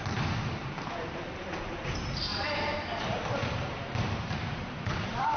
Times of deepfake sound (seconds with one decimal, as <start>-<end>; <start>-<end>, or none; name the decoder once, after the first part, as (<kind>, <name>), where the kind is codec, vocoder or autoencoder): 0.0-5.4 (vocoder, BigVGAN v2)